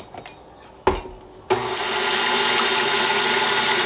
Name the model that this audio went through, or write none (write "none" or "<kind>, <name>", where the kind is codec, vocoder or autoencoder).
none